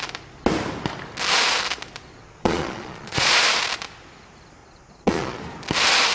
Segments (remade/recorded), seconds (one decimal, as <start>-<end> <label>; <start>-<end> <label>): 0.0-2.2 recorded; 2.2-3.4 remade; 3.4-4.6 recorded; 4.6-5.4 remade; 5.4-6.1 recorded